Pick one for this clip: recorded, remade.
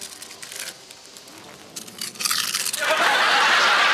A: recorded